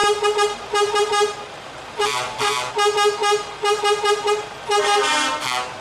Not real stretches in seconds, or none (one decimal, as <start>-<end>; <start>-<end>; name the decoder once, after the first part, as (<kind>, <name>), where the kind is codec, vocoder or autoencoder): 0.0-2.7 (vocoder, BigVGAN v2); 3.2-5.3